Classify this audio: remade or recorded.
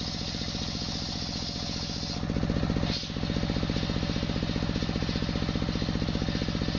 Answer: recorded